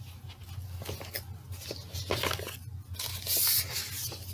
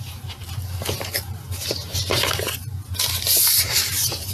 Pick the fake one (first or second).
second